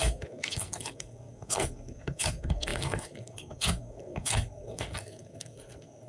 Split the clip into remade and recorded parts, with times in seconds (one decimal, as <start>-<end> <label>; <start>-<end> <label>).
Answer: 0.0-6.1 remade